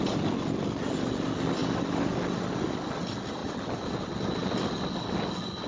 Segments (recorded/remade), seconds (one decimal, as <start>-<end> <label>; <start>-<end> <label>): 0.0-5.7 recorded